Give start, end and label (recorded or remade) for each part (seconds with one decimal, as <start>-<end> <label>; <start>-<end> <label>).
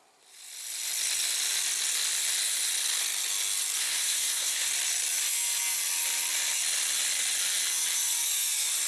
0.0-3.8 recorded; 3.8-4.7 remade; 4.7-8.9 recorded